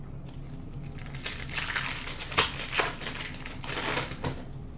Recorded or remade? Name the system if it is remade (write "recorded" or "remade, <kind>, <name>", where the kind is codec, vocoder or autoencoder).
recorded